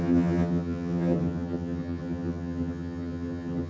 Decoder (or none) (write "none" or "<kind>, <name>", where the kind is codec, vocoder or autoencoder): vocoder, HiFi-GAN